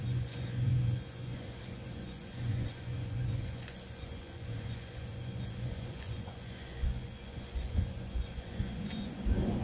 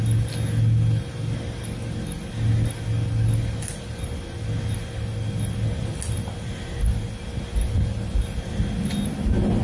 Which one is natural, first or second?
second